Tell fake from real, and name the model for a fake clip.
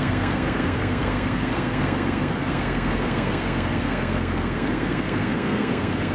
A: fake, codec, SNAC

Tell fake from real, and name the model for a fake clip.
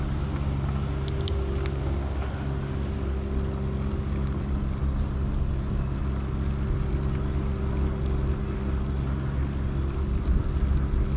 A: real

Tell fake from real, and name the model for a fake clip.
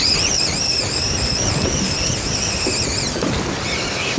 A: real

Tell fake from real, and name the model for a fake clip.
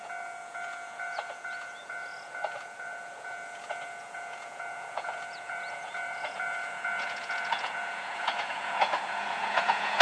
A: fake, vocoder, Vocos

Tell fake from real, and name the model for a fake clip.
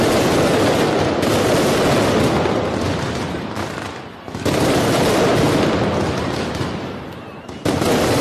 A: real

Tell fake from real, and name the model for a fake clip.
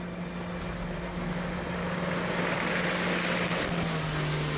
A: real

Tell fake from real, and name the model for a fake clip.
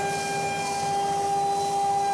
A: real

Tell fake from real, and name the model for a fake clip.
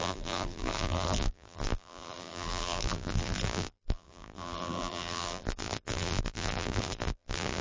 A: fake, vocoder, BigVGAN v2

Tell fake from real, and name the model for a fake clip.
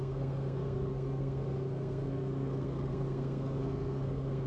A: fake, codec, SNAC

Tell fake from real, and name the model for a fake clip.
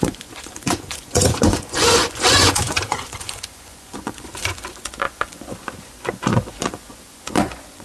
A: fake, vocoder, Vocos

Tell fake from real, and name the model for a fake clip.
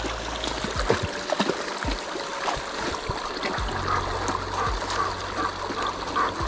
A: real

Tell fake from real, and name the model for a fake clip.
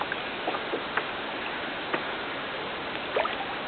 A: real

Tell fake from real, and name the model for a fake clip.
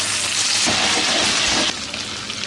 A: real